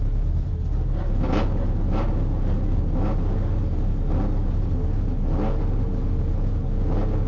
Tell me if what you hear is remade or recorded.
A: recorded